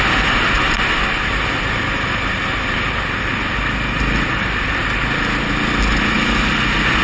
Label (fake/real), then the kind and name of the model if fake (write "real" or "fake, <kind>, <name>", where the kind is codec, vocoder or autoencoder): real